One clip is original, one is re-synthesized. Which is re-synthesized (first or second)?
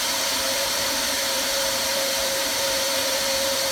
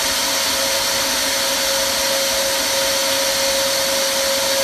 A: first